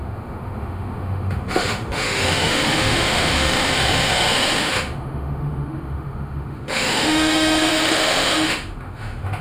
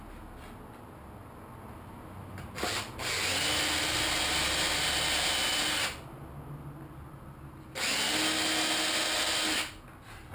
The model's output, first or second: first